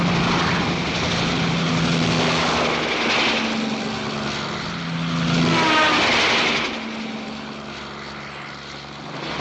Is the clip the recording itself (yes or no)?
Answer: yes